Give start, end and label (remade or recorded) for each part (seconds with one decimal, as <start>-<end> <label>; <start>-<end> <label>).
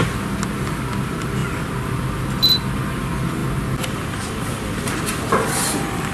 0.0-6.1 recorded